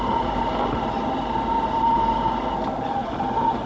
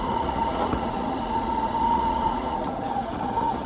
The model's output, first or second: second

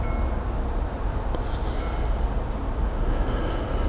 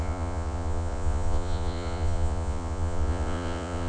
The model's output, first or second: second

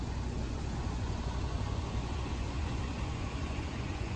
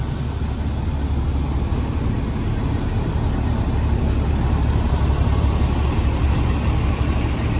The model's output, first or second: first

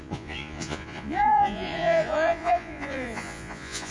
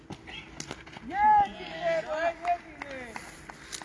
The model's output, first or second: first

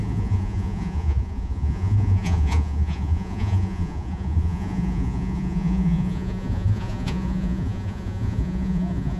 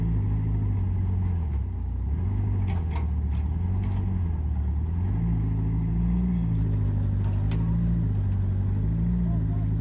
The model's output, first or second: first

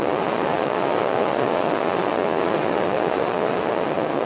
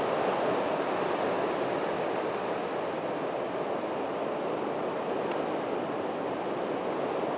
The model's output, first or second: first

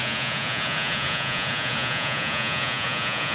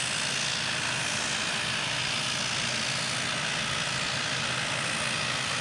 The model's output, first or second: first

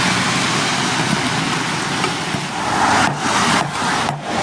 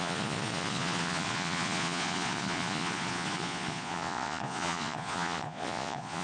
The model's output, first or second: second